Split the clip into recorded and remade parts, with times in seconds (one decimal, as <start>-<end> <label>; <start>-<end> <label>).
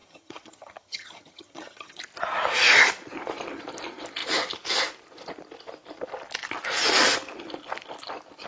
0.0-2.0 remade; 2.0-8.5 recorded